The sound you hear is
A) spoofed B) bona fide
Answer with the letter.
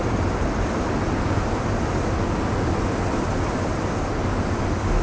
B